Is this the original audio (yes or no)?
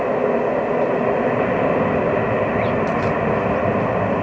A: yes